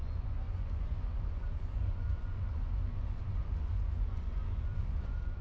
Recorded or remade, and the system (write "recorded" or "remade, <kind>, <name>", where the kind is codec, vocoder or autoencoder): remade, vocoder, Vocos